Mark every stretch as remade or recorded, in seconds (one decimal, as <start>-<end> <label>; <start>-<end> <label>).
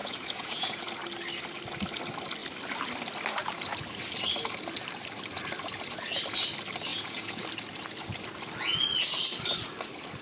0.0-0.8 remade; 0.8-6.9 recorded; 6.9-7.4 remade; 7.4-10.2 recorded